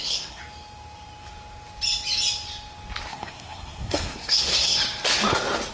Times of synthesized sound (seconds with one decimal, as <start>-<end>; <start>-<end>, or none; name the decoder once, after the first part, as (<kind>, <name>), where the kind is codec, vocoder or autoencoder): 0.0-0.4 (codec, SNAC); 3.1-4.8